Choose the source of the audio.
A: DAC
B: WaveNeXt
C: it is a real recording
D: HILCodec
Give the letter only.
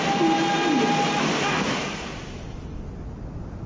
C